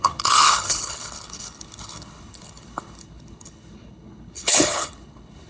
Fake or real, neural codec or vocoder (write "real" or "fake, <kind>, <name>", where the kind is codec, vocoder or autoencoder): fake, codec, HILCodec